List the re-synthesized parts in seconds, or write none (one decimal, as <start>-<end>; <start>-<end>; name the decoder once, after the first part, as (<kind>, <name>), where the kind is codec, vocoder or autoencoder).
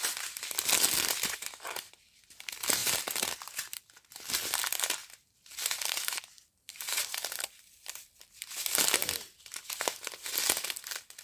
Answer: 2.8-3.8 (vocoder, BigVGAN v2); 5.0-7.3